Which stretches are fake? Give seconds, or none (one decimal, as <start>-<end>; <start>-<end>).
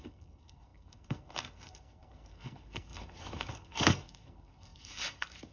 0.0-5.5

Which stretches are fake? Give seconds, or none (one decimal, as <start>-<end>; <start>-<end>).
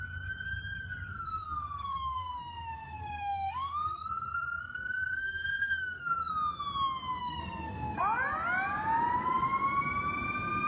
1.1-6.3; 7.2-8.0